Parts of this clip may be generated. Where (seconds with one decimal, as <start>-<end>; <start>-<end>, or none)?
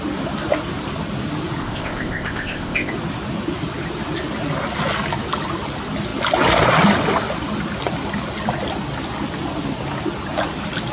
1.6-2.9